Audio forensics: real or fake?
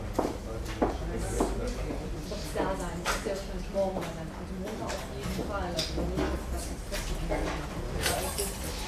real